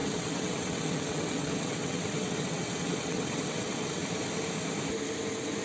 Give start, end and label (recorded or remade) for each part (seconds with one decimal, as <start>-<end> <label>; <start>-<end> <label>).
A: 0.0-4.0 remade; 4.0-5.6 recorded